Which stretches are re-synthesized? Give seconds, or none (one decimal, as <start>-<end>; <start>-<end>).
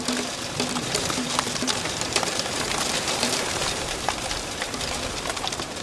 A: 0.8-4.1